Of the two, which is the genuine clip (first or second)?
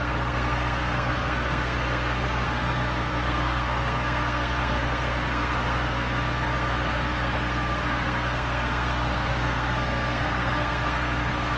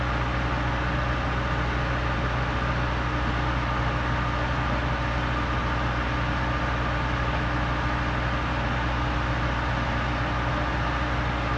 second